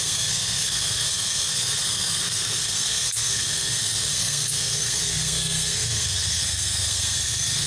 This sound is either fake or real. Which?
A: fake